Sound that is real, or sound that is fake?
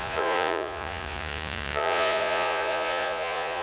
fake